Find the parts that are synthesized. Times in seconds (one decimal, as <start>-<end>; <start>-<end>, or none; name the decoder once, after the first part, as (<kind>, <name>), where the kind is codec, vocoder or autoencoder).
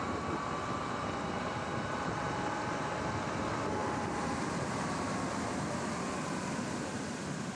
none